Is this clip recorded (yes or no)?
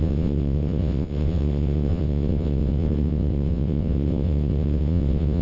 no